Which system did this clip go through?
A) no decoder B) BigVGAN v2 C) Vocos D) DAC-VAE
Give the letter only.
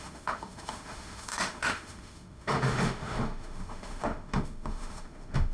D